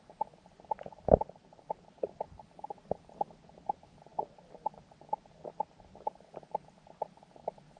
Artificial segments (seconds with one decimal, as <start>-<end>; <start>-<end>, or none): 4.1-4.8